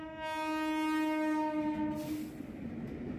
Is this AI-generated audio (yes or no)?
no